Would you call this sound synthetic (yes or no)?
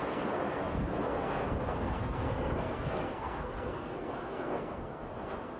yes